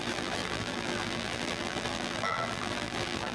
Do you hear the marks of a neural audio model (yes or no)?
yes